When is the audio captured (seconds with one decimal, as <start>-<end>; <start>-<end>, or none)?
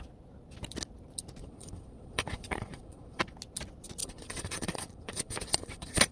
0.0-1.4; 3.2-4.0